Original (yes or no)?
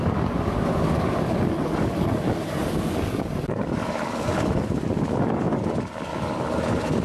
no